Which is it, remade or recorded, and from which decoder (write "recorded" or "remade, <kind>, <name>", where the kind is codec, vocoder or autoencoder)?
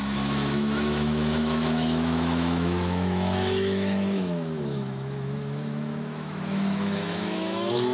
remade, autoencoder, DAC-VAE